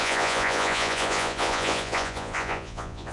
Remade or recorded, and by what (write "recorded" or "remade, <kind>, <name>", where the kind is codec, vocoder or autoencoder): remade, vocoder, Vocos